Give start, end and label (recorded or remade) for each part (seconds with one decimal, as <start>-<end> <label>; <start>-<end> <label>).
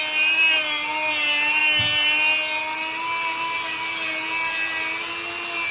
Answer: 0.0-5.7 recorded